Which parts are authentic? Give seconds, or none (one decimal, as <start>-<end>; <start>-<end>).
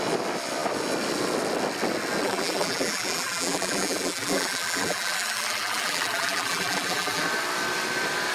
0.0-2.2; 7.2-8.3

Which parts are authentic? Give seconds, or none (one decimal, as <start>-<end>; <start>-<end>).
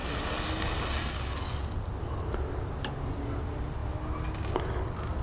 0.0-5.2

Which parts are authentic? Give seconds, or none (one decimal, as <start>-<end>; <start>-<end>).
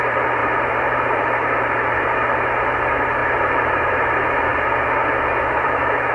4.5-5.5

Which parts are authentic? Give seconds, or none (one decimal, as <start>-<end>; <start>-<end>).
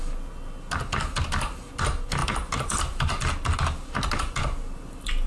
0.0-2.2; 2.8-5.3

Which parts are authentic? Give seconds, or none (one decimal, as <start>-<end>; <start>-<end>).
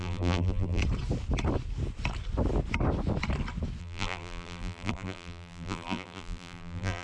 0.8-3.8